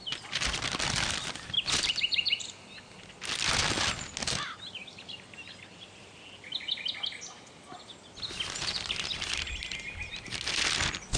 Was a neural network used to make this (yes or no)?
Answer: no